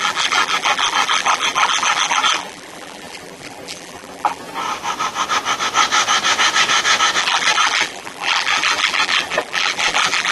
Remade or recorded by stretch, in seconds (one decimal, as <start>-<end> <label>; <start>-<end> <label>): 0.0-4.4 remade; 4.4-7.2 recorded; 7.2-10.3 remade